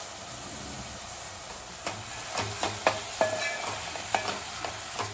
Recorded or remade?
recorded